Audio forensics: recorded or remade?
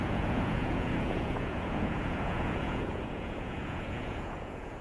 remade